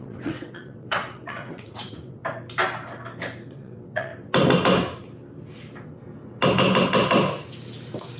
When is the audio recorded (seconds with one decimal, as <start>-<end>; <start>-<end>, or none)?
2.2-3.5; 4.1-8.2